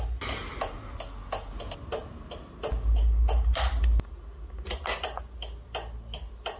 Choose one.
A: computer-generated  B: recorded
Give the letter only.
B